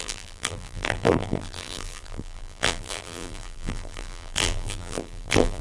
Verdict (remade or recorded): remade